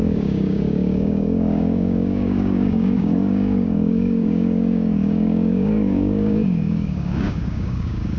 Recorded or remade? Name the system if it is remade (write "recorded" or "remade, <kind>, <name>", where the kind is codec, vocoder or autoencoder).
remade, codec, DAC